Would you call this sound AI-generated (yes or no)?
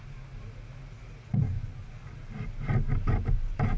no